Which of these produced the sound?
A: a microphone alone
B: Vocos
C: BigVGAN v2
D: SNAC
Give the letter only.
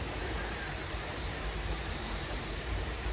C